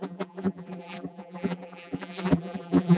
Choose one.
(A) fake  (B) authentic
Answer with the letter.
A